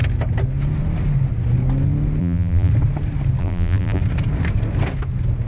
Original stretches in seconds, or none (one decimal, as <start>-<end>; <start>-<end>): 0.0-2.2; 2.7-3.4; 4.0-5.5